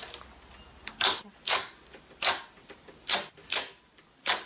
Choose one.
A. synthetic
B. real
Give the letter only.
B